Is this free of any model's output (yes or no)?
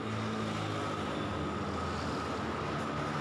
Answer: yes